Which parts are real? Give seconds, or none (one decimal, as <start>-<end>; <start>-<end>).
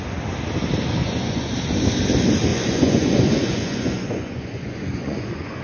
0.0-1.0; 1.5-2.5